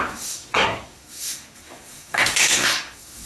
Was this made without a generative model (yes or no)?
no